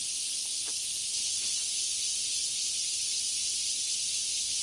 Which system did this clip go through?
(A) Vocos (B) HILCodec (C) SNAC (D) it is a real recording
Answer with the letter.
D